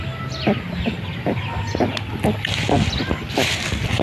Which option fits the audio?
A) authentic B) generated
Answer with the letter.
A